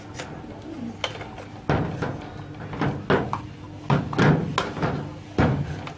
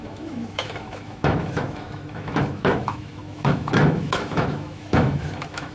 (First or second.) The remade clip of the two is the second